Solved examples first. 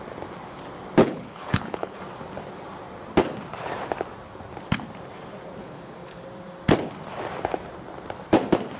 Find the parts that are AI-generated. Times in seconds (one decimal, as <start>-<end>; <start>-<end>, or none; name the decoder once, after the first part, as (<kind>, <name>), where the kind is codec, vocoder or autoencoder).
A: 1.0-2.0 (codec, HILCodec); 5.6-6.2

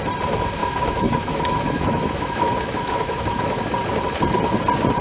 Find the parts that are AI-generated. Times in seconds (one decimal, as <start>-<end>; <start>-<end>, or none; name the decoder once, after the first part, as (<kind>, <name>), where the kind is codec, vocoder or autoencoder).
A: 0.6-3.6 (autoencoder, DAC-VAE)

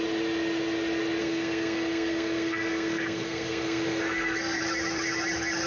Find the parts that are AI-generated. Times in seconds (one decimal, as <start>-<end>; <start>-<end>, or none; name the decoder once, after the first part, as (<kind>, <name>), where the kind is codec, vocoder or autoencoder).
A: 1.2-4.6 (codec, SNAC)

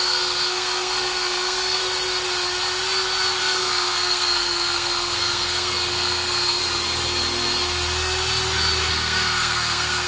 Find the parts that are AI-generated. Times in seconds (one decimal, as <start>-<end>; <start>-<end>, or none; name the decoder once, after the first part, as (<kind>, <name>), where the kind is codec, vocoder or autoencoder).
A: 0.0-1.8 (codec, SNAC); 3.4-6.6; 8.9-10.1

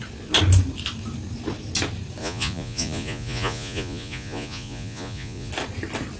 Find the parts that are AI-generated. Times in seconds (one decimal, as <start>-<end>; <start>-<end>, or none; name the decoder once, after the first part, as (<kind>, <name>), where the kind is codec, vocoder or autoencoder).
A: 2.2-5.5 (vocoder, Vocos)

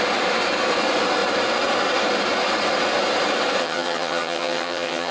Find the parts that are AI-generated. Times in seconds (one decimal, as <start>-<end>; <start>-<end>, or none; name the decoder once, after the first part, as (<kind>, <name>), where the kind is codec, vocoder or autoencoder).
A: 3.6-5.1 (vocoder, HiFi-GAN)